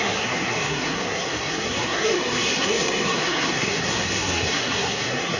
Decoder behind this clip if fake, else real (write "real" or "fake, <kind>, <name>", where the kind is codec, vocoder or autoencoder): fake, codec, SNAC